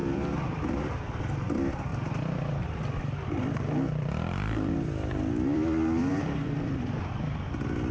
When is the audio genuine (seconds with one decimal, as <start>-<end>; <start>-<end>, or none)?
0.8-1.9; 6.2-7.9